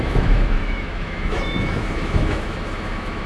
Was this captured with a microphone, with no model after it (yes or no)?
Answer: no